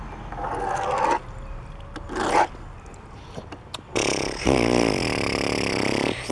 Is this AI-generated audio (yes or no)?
no